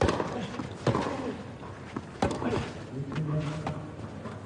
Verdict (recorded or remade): recorded